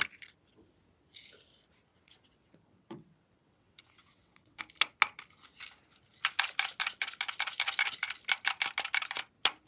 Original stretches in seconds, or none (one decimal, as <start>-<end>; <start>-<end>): 0.0-1.9; 4.6-9.7